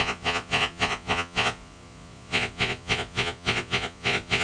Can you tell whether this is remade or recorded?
remade